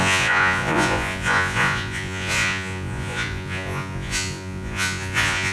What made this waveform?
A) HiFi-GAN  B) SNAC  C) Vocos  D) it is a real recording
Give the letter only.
C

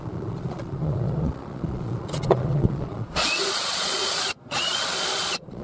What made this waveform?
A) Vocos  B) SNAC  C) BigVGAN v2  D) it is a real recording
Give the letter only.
A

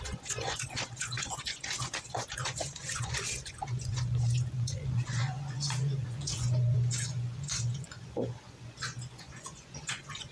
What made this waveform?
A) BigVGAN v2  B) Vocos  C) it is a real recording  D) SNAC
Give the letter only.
B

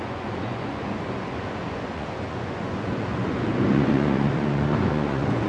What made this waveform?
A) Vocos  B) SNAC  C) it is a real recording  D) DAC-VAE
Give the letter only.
A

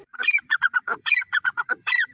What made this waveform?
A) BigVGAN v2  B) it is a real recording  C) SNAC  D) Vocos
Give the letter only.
D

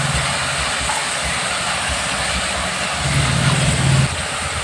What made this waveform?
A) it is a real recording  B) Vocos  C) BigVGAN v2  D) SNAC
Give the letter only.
A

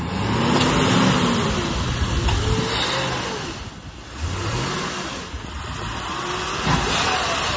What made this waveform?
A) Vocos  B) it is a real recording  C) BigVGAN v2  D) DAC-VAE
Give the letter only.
B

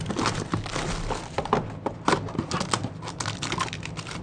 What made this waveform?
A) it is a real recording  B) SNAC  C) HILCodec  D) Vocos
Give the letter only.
A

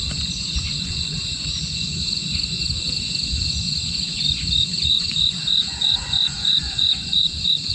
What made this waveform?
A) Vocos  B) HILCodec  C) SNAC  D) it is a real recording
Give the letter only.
A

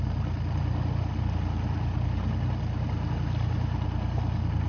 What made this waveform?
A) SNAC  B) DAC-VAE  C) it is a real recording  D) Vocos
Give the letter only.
C